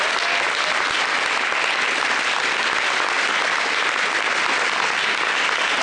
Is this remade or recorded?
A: recorded